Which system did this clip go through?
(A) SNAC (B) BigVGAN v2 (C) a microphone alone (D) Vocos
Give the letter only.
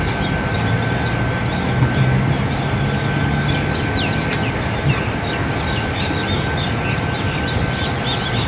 C